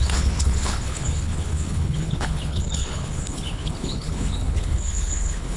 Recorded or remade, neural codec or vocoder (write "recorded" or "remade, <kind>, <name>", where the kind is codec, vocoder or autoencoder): remade, codec, HILCodec